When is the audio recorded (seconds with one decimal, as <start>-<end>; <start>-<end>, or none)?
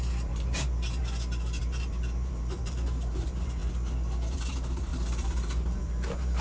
1.0-1.6; 3.6-4.5